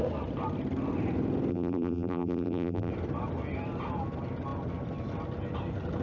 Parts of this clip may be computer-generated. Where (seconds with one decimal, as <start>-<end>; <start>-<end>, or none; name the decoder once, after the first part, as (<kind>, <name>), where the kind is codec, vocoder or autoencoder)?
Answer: 1.5-2.9 (vocoder, BigVGAN v2)